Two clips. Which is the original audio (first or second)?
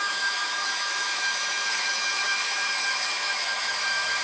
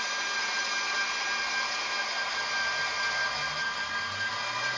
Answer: second